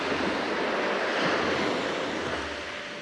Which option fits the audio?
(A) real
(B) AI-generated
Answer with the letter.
A